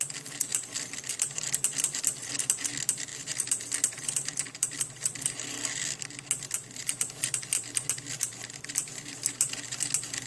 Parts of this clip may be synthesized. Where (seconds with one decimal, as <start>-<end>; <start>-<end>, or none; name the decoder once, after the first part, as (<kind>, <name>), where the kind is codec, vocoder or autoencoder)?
0.5-1.1 (vocoder, BigVGAN v2); 3.1-7.5